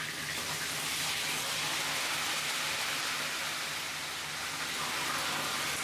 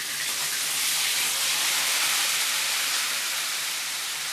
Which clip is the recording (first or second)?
first